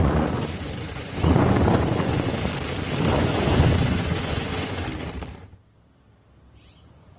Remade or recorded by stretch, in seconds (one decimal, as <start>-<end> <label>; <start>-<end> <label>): 0.0-2.3 remade; 2.3-3.1 recorded; 3.1-4.9 remade; 4.9-6.8 recorded; 6.8-7.2 remade